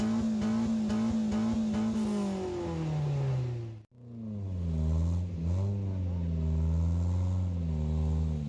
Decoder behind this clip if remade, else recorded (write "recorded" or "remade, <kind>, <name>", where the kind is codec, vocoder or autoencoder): recorded